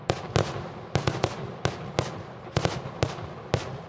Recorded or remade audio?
recorded